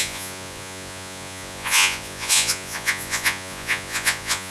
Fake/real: fake